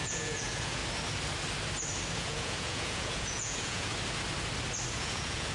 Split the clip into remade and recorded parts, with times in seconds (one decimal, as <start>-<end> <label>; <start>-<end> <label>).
0.0-0.8 remade; 0.8-2.2 recorded; 2.2-3.9 remade; 3.9-4.9 recorded; 4.9-5.5 remade